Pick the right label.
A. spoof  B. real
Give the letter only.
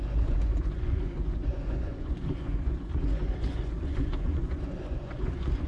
A